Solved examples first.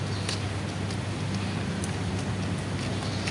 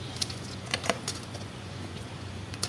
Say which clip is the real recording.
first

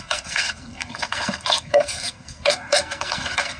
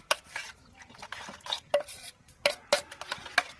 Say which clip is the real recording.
second